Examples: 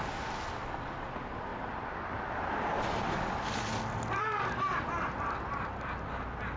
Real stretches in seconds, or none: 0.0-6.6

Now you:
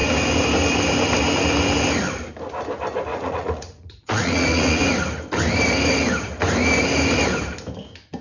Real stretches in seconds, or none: 0.0-3.1; 4.8-8.2

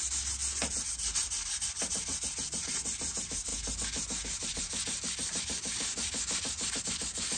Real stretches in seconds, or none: 0.0-7.4

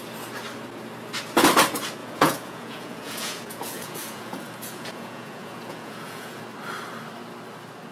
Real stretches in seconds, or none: 0.0-2.0; 6.4-7.9

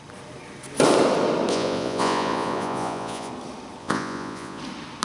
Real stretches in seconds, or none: 0.0-1.5; 3.3-3.8; 4.6-5.0